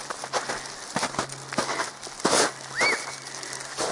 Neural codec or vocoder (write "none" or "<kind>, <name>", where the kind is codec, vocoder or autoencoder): none